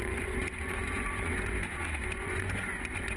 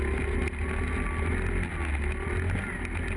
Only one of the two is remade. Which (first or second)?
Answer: first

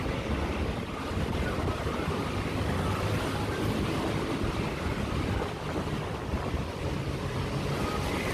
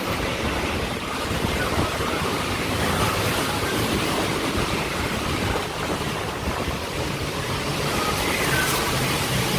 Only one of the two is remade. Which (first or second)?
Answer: second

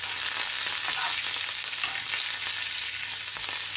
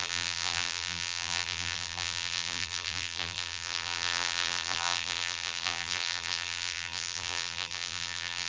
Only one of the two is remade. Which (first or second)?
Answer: second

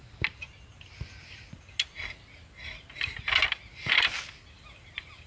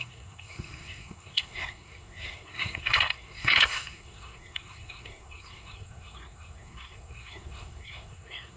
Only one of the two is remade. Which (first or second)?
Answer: second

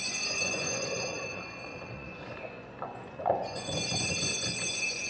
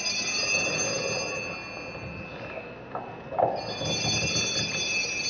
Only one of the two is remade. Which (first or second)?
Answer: first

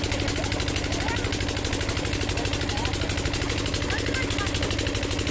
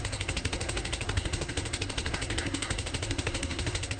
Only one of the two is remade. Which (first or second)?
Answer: second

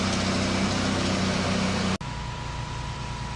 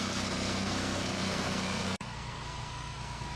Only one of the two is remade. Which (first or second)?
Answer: second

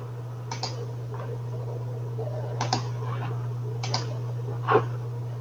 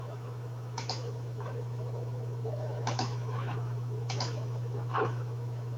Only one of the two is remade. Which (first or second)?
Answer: second